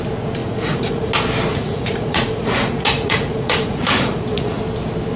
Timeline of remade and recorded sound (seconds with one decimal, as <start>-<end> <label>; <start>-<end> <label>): 0.0-0.4 recorded; 0.4-1.1 remade; 1.1-1.5 recorded; 1.5-4.6 remade; 4.6-5.2 recorded